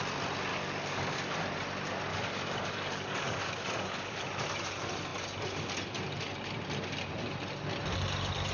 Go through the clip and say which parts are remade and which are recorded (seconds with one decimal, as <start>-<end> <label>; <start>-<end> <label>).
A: 0.0-0.5 recorded; 0.5-1.3 remade; 1.3-2.1 recorded; 2.1-4.2 remade; 4.2-8.5 recorded